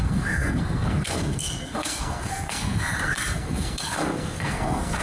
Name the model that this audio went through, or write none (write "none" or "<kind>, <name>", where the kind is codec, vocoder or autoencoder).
codec, SNAC